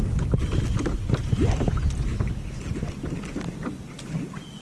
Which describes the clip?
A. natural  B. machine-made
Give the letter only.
A